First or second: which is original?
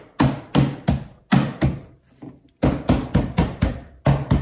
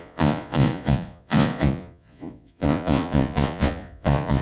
first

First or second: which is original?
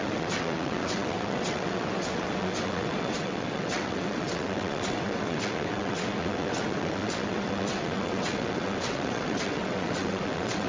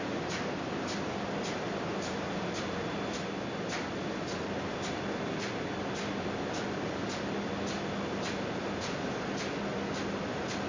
second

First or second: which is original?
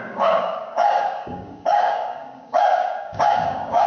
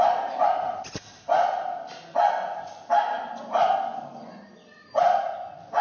second